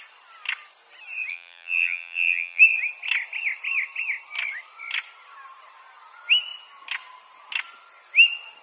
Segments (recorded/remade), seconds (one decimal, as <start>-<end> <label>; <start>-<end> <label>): 0.0-1.3 recorded; 1.3-2.6 remade; 2.6-8.6 recorded